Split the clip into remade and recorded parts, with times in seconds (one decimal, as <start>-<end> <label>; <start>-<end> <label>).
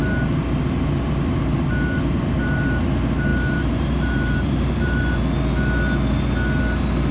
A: 0.0-3.3 recorded; 3.3-5.0 remade; 5.0-7.1 recorded